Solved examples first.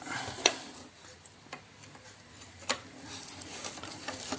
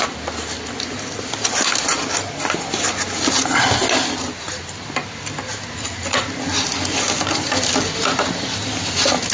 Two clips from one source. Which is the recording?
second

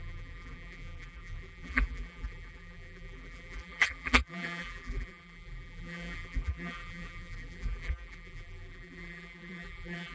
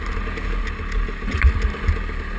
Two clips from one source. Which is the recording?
second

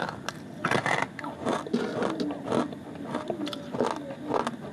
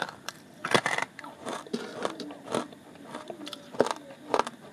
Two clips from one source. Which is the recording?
first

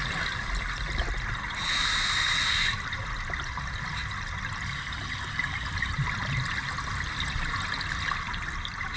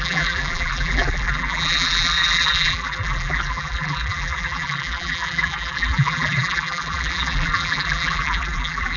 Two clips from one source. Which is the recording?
first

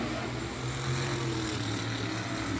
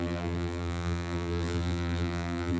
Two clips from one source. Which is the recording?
first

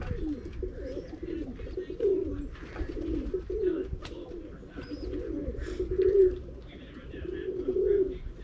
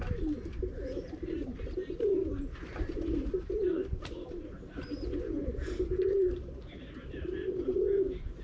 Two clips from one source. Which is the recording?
first